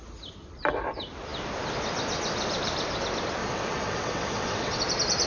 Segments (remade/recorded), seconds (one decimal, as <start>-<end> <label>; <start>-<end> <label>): 0.0-3.4 recorded; 3.4-4.8 remade; 4.8-5.3 recorded